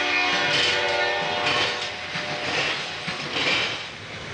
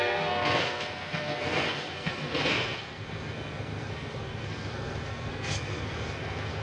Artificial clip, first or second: second